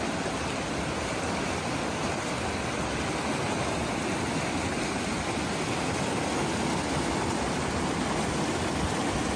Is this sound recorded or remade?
recorded